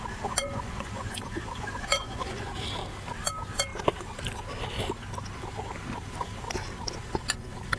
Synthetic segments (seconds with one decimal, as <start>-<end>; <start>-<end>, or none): 0.4-2.5